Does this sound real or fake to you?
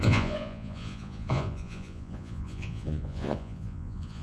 fake